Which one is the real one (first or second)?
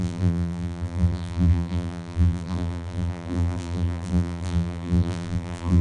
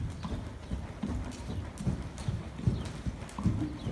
second